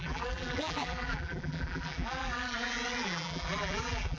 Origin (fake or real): fake